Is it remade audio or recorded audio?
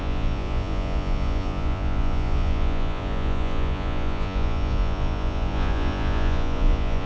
remade